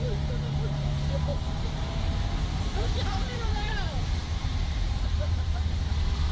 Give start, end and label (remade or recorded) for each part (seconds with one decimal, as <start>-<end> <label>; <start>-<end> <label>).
0.0-1.3 remade; 1.3-2.6 recorded; 2.6-6.3 remade

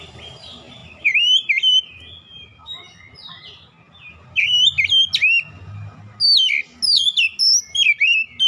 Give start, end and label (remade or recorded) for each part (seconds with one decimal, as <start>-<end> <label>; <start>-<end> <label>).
0.0-0.8 remade; 0.8-1.8 recorded; 1.8-2.5 remade; 2.5-7.6 recorded; 7.6-8.5 remade

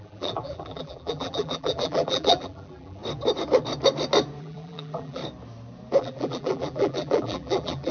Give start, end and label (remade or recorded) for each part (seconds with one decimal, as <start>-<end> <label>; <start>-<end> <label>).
0.0-3.0 remade; 3.0-4.4 recorded; 4.4-5.2 remade; 5.2-6.0 recorded; 6.0-7.9 remade

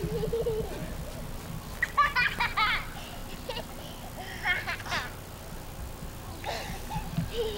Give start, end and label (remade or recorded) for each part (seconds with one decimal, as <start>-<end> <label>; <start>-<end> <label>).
0.0-7.6 recorded

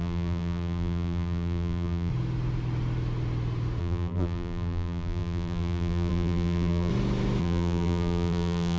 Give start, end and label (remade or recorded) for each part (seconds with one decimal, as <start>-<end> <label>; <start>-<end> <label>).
0.0-2.1 remade; 2.1-3.8 recorded; 3.8-6.9 remade; 6.9-7.4 recorded; 7.4-8.8 remade

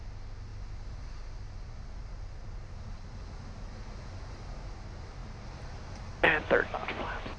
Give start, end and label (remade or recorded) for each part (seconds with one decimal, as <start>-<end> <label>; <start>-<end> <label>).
0.0-5.2 recorded; 5.2-6.1 remade; 6.1-7.4 recorded

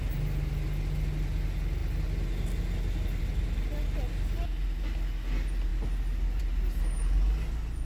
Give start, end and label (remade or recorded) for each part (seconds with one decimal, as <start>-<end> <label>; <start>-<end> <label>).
0.0-7.8 recorded

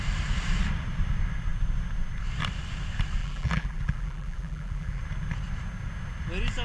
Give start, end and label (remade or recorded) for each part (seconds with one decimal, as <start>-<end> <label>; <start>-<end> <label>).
0.0-3.2 recorded; 3.2-5.0 remade; 5.0-6.6 recorded